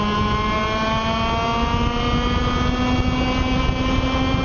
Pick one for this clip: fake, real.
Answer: real